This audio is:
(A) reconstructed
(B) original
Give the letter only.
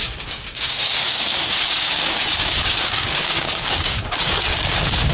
A